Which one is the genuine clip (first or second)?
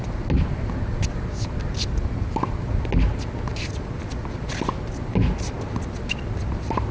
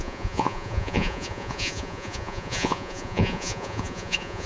first